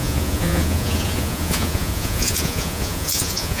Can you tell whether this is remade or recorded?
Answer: remade